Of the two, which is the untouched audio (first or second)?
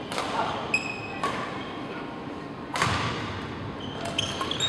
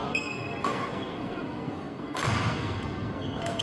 first